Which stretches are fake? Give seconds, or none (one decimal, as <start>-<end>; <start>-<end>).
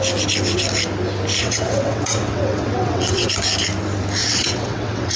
1.4-3.3; 4.2-5.2